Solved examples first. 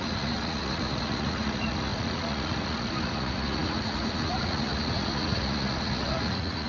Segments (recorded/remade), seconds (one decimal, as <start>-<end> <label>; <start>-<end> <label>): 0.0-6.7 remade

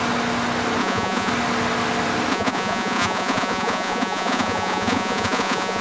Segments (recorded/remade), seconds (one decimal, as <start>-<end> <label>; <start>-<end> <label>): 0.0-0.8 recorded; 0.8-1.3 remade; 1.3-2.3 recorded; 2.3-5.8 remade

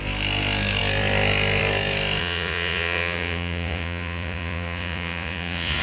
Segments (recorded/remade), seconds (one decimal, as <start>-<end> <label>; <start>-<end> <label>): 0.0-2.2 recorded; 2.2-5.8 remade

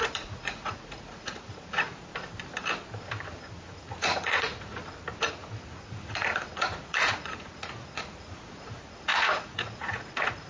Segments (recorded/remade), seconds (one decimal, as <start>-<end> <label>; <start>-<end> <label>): 0.0-2.1 remade; 2.1-3.6 recorded; 3.6-4.7 remade; 4.7-5.2 recorded; 5.2-10.5 remade

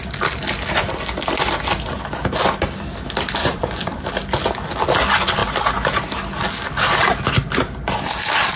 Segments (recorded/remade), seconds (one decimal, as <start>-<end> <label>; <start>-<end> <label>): 0.0-3.4 recorded; 3.4-4.0 remade; 4.0-8.6 recorded

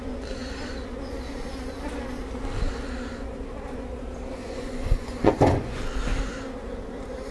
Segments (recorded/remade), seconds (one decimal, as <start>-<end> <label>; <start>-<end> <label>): 0.0-4.4 recorded; 4.4-5.8 remade; 5.8-7.3 recorded

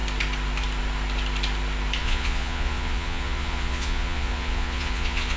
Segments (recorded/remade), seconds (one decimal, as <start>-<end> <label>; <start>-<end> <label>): 0.0-2.0 recorded; 2.0-5.4 remade

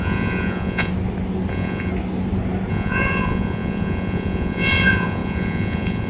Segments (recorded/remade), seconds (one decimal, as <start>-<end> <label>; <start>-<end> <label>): 0.0-0.9 remade; 0.9-1.5 recorded; 1.5-1.9 remade; 1.9-2.7 recorded; 2.7-6.1 remade